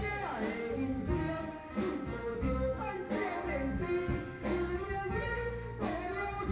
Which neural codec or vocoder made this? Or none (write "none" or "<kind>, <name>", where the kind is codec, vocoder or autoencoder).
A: none